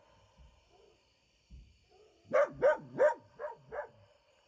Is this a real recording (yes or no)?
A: yes